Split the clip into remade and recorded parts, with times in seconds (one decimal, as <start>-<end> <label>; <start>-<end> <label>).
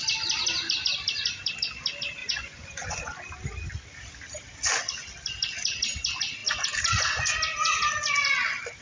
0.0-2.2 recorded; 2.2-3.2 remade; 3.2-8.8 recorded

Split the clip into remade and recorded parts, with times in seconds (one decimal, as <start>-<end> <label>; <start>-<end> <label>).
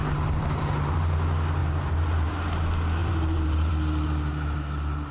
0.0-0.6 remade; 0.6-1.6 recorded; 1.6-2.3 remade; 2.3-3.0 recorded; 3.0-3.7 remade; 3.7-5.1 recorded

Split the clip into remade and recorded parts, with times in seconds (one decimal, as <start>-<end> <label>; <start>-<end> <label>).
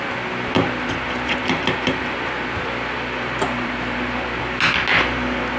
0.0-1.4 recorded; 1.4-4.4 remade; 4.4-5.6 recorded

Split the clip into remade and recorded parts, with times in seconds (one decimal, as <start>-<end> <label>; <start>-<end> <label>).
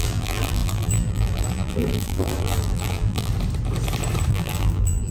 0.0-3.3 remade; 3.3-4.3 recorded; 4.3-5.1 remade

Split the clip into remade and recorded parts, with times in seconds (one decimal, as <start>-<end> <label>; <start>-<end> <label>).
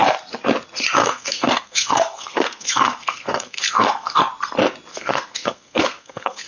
0.0-1.0 recorded; 1.0-4.2 remade; 4.2-4.9 recorded; 4.9-6.5 remade